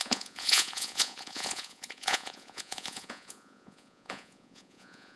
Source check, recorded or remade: remade